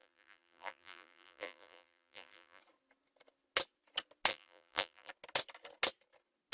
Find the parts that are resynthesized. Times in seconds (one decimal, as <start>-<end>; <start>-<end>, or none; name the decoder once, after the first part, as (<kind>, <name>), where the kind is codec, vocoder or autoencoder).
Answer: 0.0-2.6 (vocoder, BigVGAN v2); 4.3-5.1